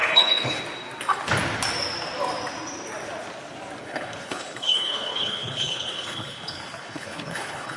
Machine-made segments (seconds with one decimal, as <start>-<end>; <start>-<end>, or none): 0.0-0.6; 3.8-7.8